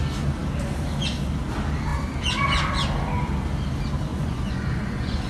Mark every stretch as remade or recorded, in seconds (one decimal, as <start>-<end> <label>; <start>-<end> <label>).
0.0-4.1 recorded; 4.1-5.3 remade